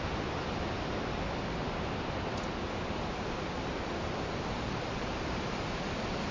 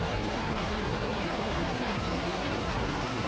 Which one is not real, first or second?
second